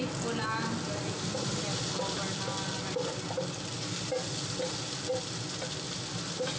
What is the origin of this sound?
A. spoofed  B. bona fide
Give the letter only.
B